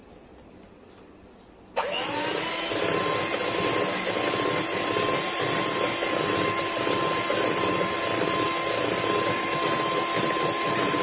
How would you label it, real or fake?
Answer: real